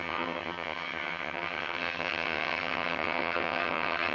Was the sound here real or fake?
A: fake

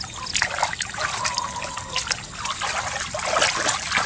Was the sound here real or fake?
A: real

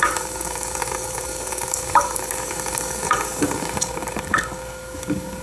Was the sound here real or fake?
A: fake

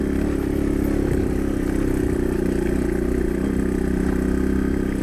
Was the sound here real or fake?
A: real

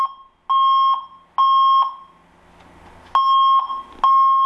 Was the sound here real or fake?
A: real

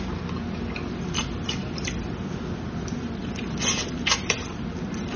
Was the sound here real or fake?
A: real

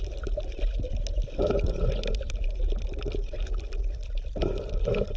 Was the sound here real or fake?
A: real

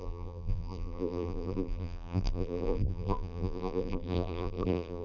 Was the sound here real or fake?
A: fake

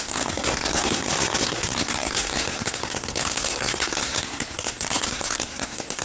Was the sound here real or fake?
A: fake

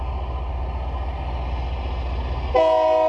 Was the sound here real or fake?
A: real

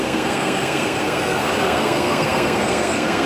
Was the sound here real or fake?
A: fake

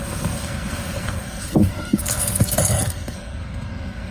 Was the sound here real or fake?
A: fake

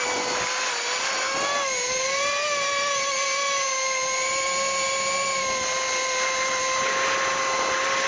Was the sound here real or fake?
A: real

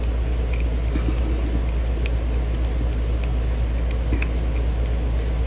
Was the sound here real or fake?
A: real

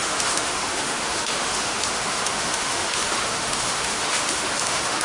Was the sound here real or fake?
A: fake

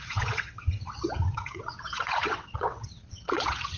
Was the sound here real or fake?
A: fake